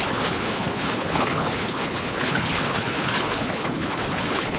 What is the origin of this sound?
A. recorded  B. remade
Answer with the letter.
B